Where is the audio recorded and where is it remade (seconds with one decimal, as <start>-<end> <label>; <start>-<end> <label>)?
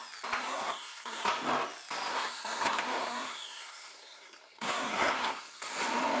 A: 0.0-0.4 recorded; 0.4-1.3 remade; 1.3-2.1 recorded; 2.1-5.7 remade; 5.7-6.2 recorded